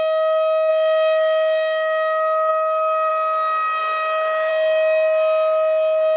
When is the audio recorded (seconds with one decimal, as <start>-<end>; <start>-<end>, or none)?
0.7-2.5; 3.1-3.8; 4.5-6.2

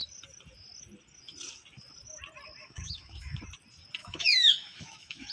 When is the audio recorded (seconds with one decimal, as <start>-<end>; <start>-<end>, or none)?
0.0-2.6; 3.4-4.0

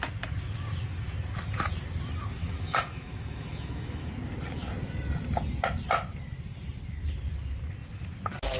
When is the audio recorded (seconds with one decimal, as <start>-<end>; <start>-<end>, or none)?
0.0-2.4; 4.1-8.6

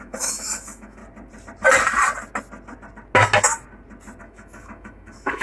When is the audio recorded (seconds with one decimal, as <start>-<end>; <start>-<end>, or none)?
1.0-4.2

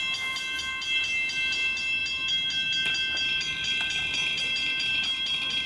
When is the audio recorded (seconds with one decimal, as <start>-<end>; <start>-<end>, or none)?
0.0-5.7

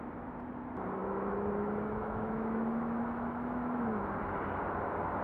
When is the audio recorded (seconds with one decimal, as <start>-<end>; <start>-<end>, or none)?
0.0-1.0; 4.1-5.2